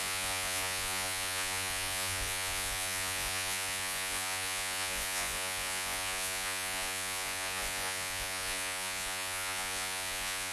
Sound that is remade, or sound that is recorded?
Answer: remade